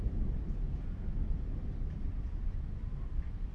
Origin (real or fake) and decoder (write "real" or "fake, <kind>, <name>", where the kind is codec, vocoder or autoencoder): real